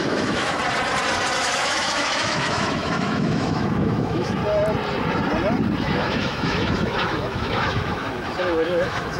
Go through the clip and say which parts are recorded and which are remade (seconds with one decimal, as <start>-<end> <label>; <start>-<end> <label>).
0.0-0.6 remade; 0.6-1.4 recorded; 1.4-4.4 remade; 4.4-5.8 recorded; 5.8-9.2 remade